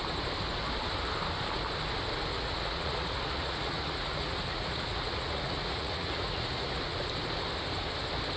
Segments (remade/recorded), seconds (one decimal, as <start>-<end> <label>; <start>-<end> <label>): 0.0-2.3 recorded; 2.3-6.7 remade; 6.7-8.4 recorded